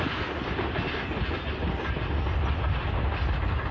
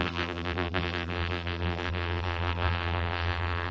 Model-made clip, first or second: second